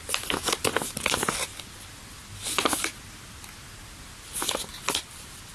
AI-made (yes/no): no